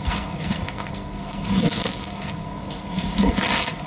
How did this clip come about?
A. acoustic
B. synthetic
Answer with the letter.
B